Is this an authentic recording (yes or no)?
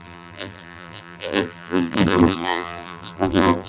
no